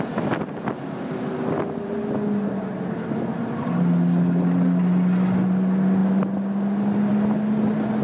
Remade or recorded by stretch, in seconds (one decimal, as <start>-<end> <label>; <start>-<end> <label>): 0.0-8.0 recorded

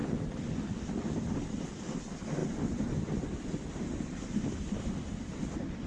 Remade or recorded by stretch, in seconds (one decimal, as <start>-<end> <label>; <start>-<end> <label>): 0.0-5.9 recorded

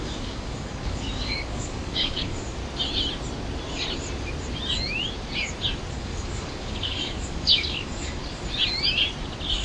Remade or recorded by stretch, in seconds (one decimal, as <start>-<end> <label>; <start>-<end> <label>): 0.0-2.6 remade; 2.6-5.9 recorded; 5.9-8.2 remade; 8.2-9.6 recorded